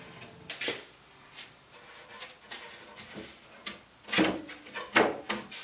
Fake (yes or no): no